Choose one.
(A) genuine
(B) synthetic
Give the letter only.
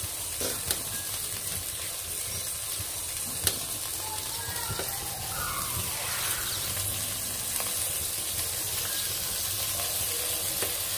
A